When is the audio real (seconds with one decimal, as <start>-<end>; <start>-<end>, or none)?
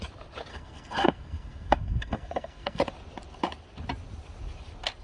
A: 0.0-0.5; 2.8-5.0